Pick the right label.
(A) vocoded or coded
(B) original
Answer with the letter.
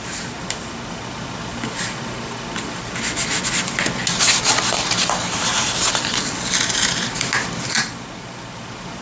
B